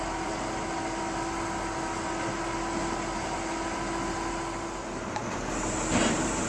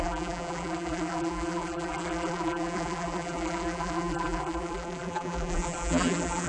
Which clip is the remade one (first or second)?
second